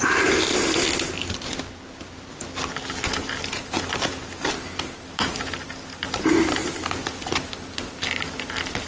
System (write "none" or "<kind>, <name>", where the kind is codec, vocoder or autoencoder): none